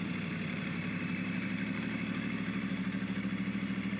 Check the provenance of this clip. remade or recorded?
remade